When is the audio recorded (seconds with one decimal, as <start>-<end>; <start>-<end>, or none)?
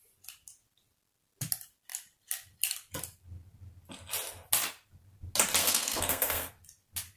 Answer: 0.0-5.6; 6.5-7.2